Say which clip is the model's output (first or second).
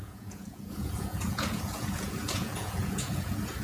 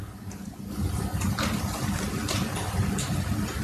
first